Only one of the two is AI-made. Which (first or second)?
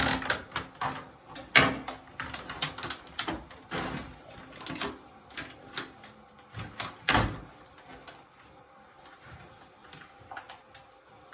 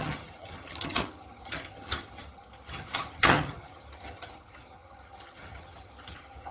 second